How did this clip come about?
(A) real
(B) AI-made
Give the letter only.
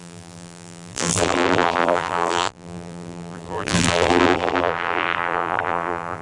B